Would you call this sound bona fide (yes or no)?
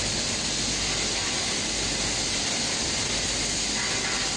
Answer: yes